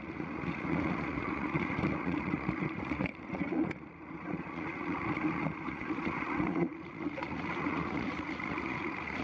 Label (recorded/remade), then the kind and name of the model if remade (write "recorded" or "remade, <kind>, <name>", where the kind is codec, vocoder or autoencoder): remade, vocoder, Vocos